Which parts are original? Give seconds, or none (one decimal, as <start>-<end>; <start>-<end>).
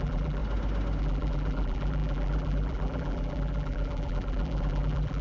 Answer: 0.4-1.0